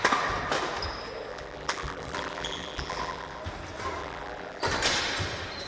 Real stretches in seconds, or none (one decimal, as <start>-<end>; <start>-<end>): 0.0-1.3; 3.4-4.0; 4.6-5.7